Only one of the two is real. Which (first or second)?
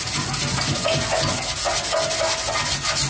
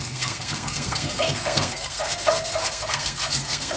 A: first